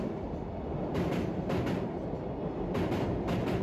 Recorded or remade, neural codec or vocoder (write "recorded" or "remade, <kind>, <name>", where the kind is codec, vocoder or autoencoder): recorded